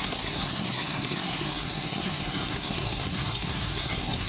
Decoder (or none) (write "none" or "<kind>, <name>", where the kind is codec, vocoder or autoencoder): codec, SNAC